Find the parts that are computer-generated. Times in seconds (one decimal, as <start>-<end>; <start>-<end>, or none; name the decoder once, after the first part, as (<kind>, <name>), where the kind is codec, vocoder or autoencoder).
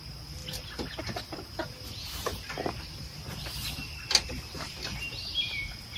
1.5-3.2 (vocoder, BigVGAN v2)